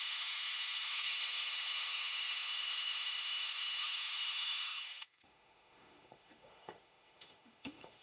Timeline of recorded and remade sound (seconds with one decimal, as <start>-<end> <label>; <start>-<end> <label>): 0.0-8.0 remade